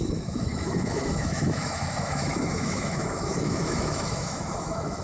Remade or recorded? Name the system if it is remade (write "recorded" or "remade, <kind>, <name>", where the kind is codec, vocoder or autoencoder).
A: remade, autoencoder, DAC-VAE